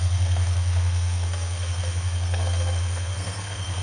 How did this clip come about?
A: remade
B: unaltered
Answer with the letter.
A